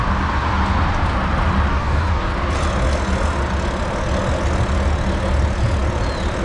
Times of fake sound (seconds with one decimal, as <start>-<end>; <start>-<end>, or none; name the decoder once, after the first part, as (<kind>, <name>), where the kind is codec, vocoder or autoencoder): 1.7-2.3 (codec, DAC)